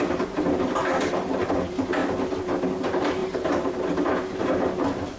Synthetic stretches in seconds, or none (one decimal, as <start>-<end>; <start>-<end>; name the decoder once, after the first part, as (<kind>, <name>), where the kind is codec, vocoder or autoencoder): 2.0-2.6 (vocoder, BigVGAN v2); 3.2-3.7